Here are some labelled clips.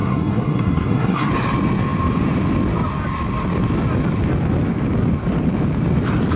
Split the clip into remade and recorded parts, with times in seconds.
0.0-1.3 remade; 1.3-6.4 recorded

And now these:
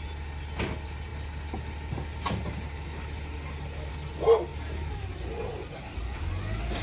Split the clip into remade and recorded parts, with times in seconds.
0.0-6.8 recorded